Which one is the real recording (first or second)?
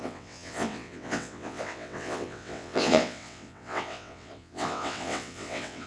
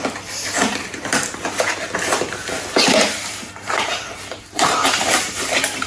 second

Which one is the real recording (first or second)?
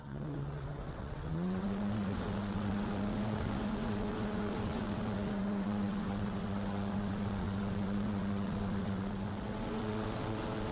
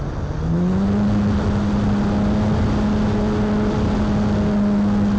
second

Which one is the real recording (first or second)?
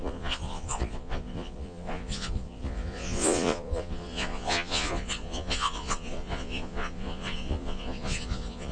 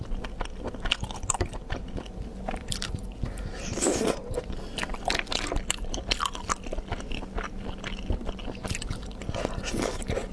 second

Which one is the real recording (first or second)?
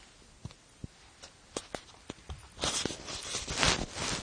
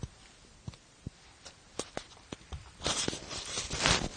first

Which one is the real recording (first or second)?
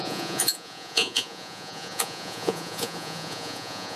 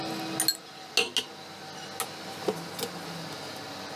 second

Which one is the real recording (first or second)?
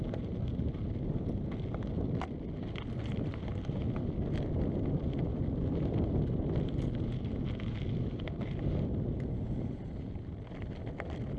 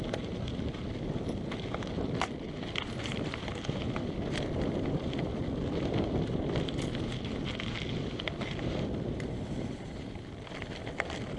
first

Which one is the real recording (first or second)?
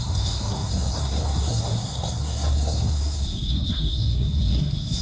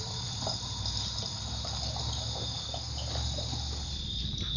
second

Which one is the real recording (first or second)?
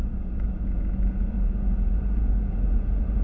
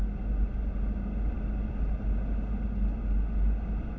second